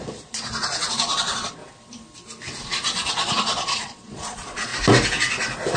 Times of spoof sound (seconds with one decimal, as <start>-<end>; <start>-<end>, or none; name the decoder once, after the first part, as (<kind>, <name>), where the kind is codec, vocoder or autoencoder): 0.0-1.6 (vocoder, Vocos); 3.1-4.7